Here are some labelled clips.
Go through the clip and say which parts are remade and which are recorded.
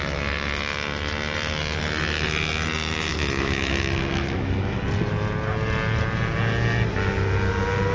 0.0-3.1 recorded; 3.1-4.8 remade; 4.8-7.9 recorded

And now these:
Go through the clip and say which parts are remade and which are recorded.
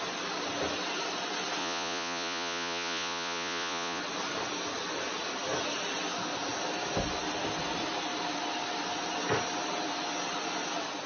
0.0-1.6 recorded; 1.6-4.0 remade; 4.0-11.1 recorded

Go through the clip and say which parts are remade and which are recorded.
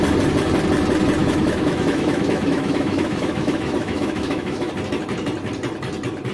0.0-1.2 recorded; 1.2-4.7 remade; 4.7-6.3 recorded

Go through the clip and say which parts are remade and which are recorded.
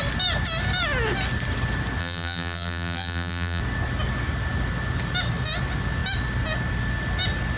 0.0-2.0 recorded; 2.0-3.6 remade; 3.6-7.6 recorded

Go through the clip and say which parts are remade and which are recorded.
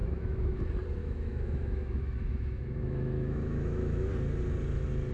0.0-0.6 remade; 0.6-1.0 recorded; 1.0-4.1 remade; 4.1-5.1 recorded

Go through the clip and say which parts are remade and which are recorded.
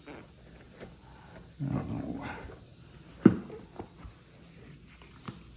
0.0-5.6 recorded